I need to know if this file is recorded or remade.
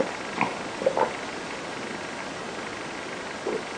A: recorded